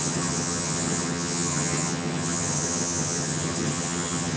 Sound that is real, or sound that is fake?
fake